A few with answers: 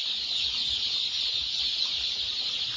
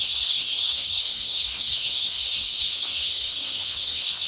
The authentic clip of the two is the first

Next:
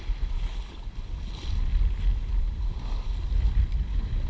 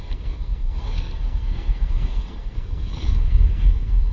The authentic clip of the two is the first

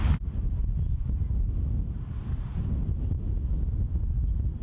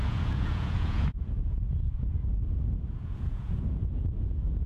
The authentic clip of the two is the first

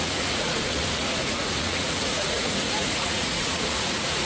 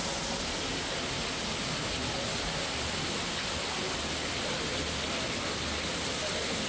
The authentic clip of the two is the second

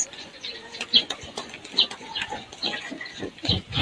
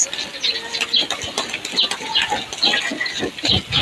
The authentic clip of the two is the second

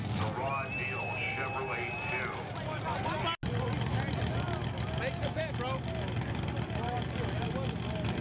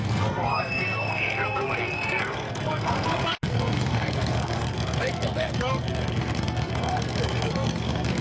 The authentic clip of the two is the first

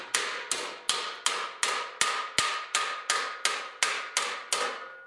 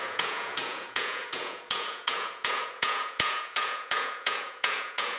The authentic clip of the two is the first